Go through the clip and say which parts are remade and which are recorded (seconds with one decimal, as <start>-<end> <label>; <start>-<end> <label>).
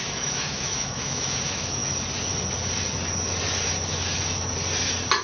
0.0-1.8 remade; 1.8-5.2 recorded